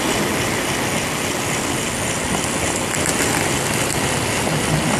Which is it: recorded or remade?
recorded